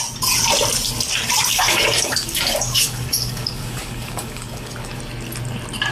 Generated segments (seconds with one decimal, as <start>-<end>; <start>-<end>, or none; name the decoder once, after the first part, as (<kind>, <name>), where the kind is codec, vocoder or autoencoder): 1.5-5.0 (codec, DAC)